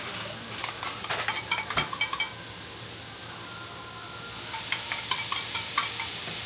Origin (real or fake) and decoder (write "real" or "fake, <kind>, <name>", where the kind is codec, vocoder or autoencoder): real